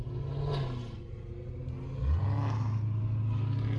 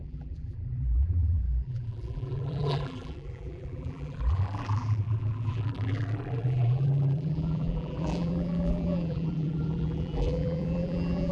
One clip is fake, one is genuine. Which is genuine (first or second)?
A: first